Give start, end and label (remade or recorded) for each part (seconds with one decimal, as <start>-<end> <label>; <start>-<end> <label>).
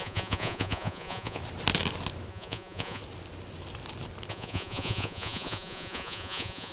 0.0-1.4 remade; 1.4-2.3 recorded; 2.3-3.0 remade; 3.0-4.3 recorded; 4.3-6.7 remade